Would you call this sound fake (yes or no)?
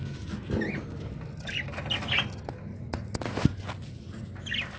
no